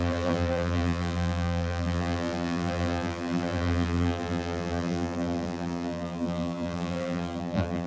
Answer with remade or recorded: remade